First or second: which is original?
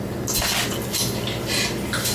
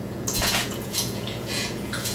first